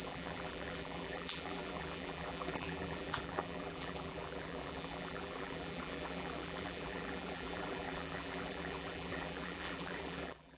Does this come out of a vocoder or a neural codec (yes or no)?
yes